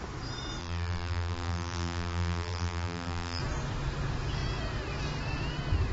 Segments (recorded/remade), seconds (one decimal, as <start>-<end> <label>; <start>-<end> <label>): 0.0-0.6 recorded; 0.6-3.4 remade; 3.4-5.9 recorded